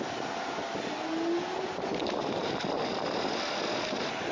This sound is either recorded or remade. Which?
recorded